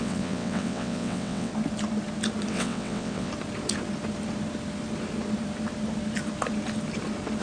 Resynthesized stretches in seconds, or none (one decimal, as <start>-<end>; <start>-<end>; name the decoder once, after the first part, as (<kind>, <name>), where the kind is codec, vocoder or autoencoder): 0.0-1.5 (vocoder, WaveNeXt); 2.5-3.3